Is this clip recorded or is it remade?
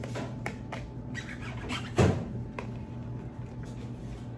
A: recorded